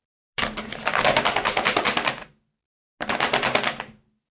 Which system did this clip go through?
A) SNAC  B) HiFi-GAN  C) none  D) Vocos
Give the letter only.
C